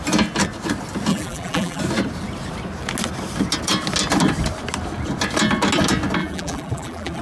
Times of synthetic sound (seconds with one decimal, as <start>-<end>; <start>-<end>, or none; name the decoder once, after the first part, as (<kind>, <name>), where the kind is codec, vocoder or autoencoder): 1.1-1.8 (vocoder, BigVGAN v2); 6.2-7.2